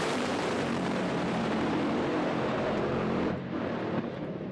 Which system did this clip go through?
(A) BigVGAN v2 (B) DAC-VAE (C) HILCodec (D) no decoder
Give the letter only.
A